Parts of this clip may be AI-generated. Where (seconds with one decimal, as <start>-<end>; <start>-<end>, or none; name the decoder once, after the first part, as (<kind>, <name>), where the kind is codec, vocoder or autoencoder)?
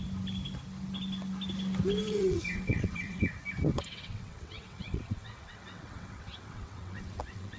2.0-3.3 (vocoder, WaveNeXt); 3.7-7.6